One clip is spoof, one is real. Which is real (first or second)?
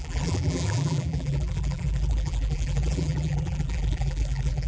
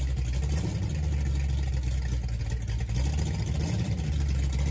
second